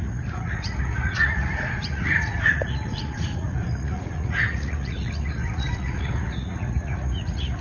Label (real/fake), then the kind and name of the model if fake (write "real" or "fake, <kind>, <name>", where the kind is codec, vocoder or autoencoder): fake, vocoder, Vocos